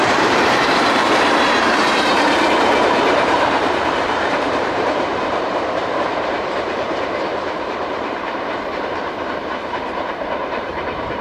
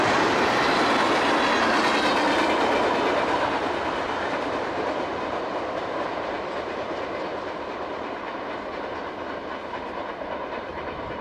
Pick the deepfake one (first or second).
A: first